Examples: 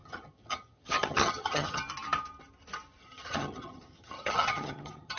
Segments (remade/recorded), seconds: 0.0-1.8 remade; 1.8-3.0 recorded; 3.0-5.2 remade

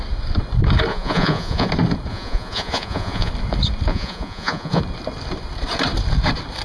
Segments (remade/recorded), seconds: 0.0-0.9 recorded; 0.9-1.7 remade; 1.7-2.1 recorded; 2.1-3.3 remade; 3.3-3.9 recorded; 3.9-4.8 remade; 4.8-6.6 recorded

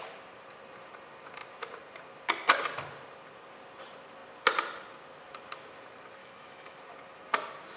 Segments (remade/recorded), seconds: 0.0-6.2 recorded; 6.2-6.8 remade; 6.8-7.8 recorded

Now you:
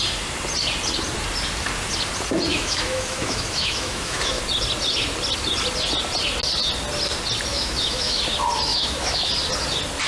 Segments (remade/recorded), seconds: 0.0-2.5 recorded; 2.5-4.4 remade; 4.4-7.5 recorded; 7.5-8.2 remade; 8.2-8.7 recorded; 8.7-9.3 remade; 9.3-10.1 recorded